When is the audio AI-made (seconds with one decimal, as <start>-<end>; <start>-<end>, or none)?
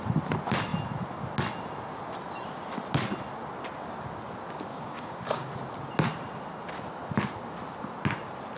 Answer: 4.7-5.5